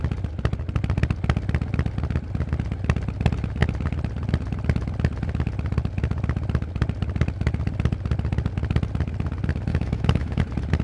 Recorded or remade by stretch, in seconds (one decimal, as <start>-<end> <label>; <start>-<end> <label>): 0.0-9.7 recorded; 9.7-10.4 remade; 10.4-10.8 recorded